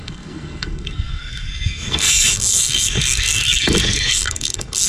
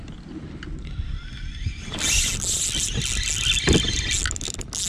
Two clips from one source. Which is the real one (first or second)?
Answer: second